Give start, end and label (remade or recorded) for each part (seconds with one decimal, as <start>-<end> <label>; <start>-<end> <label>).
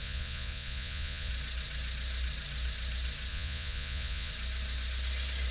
0.0-1.3 remade; 1.3-3.3 recorded; 3.3-4.3 remade; 4.3-5.5 recorded